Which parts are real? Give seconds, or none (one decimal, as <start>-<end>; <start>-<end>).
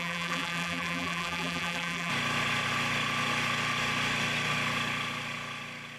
2.1-6.0